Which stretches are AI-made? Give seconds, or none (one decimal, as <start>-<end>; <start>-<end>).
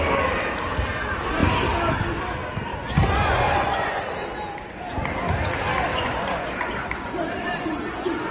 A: 2.7-4.0; 5.9-8.3